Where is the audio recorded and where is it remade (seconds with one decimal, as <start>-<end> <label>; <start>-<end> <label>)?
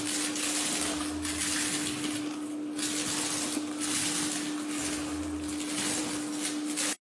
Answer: 0.0-7.2 recorded